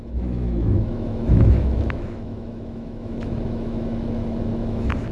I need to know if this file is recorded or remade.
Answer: remade